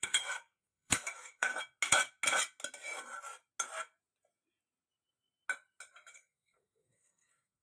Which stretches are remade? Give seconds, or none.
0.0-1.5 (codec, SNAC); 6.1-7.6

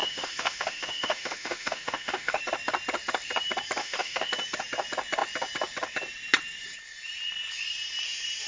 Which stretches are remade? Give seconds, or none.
0.0-2.4 (autoencoder, DAC-VAE); 3.8-4.3

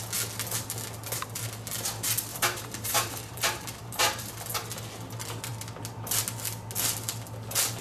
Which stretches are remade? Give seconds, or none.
2.3-4.3 (vocoder, BigVGAN v2)

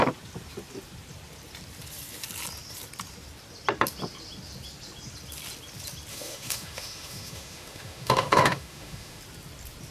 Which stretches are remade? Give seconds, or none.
6.1-9.2 (autoencoder, DAC-VAE)

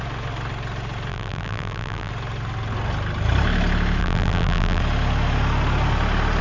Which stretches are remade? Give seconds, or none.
1.1-2.1 (vocoder, BigVGAN v2); 4.0-4.8

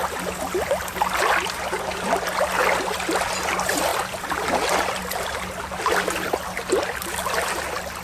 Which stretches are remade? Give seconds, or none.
none

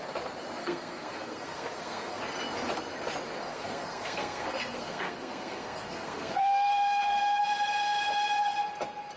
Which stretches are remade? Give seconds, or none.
0.6-2.2 (codec, SNAC); 3.4-7.4